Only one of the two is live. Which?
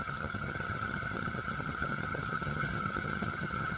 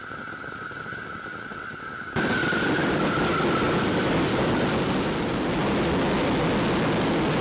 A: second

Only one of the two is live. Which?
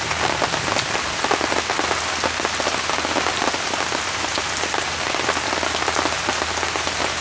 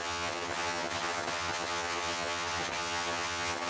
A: first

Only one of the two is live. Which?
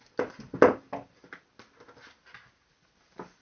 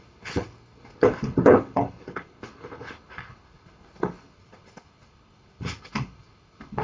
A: first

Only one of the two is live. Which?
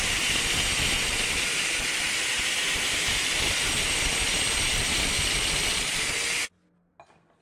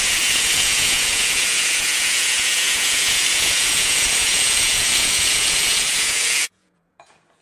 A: first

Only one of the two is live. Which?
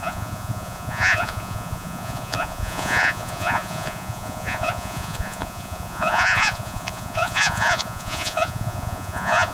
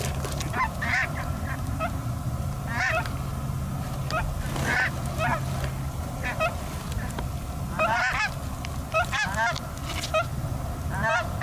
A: second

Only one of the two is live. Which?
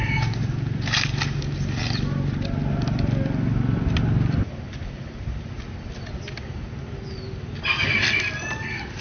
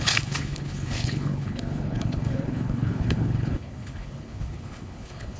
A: first